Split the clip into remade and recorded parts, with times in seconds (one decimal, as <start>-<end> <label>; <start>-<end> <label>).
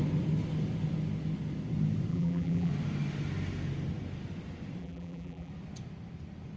0.0-2.1 recorded; 2.1-2.7 remade; 2.7-4.8 recorded; 4.8-5.5 remade; 5.5-6.6 recorded